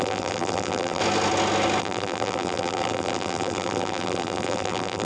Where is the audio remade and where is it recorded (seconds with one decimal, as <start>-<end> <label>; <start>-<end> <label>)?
0.0-1.0 remade; 1.0-1.8 recorded; 1.8-5.0 remade